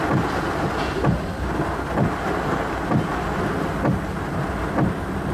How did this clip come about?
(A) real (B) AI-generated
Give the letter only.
A